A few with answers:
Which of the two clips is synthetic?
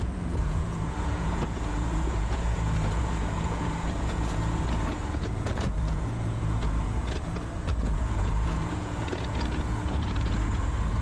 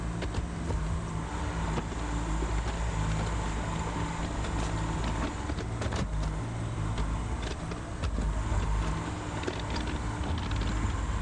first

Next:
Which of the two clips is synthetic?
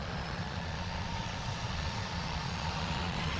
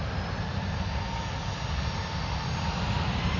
first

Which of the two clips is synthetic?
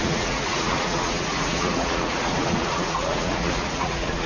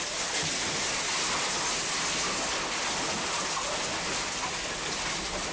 first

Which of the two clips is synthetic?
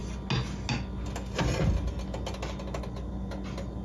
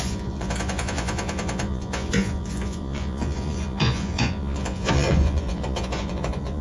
second